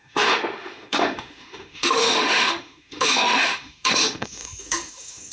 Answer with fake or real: fake